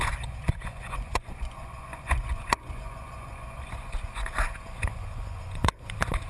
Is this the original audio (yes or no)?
no